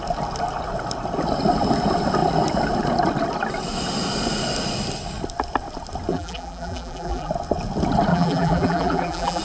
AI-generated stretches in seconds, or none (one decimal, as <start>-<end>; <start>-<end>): 6.1-7.3; 8.1-9.4